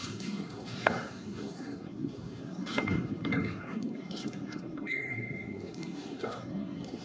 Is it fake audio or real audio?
fake